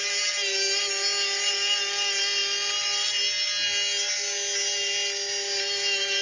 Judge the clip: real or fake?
real